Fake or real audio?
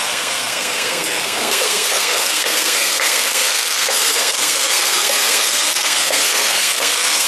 fake